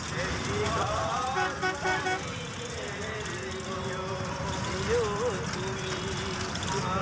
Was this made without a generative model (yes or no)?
yes